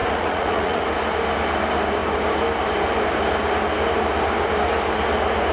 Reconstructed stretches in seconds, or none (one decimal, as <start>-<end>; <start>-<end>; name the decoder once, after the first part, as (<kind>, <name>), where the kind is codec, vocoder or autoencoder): 0.0-0.8 (vocoder, Vocos)